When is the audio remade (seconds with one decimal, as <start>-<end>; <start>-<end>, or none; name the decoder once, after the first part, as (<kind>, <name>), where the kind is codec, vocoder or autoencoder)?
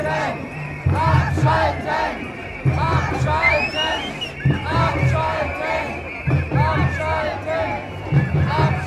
0.0-1.5 (vocoder, BigVGAN v2); 2.4-5.5